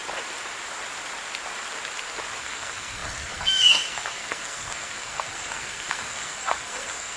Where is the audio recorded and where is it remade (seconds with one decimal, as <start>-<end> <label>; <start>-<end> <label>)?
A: 0.0-2.4 recorded; 2.4-7.2 remade